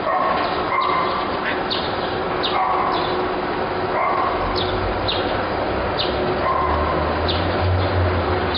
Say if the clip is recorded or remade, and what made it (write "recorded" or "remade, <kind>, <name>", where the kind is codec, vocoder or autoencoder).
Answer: recorded